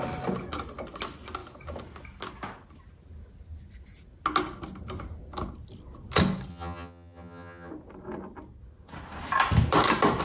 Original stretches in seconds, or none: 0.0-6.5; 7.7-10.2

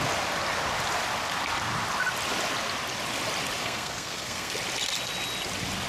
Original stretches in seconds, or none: 0.0-3.6; 4.5-5.9

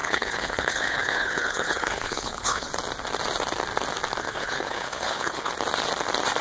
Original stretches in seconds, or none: 2.7-4.2; 5.5-6.4

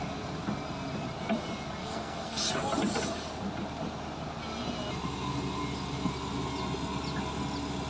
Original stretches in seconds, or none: 0.0-1.8; 2.4-7.9

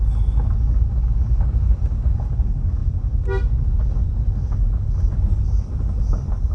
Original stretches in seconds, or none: 0.0-6.5

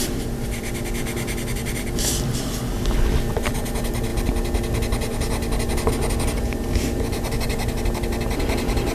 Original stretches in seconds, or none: 0.0-8.9

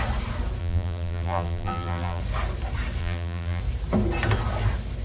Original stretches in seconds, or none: 0.0-0.6; 2.2-3.0; 3.6-5.0

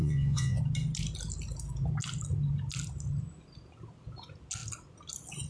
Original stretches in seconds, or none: 0.6-5.5